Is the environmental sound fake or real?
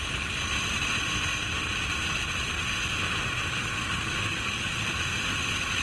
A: real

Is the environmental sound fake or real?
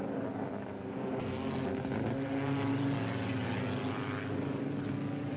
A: real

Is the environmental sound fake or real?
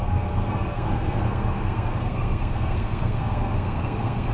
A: fake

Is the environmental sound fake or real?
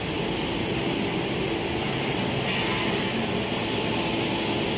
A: real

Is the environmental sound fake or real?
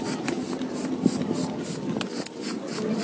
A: real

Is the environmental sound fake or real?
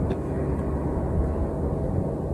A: real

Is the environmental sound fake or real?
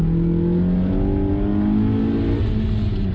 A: real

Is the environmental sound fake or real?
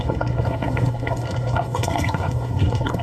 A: fake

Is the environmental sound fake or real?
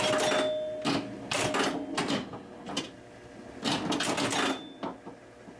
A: real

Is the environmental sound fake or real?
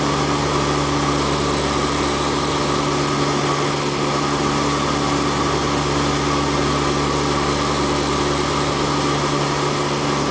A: real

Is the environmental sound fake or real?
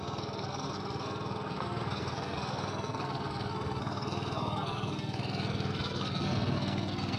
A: fake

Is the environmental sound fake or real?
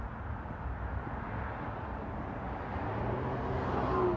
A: real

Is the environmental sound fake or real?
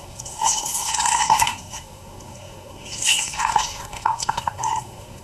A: fake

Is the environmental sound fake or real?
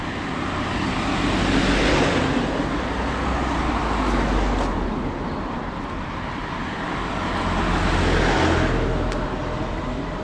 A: real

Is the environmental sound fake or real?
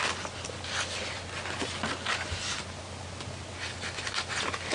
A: real